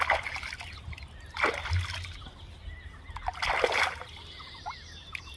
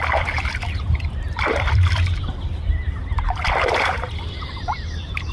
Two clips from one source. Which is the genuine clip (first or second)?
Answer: first